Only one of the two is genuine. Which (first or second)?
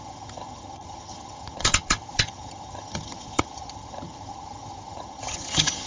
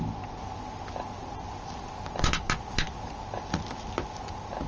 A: second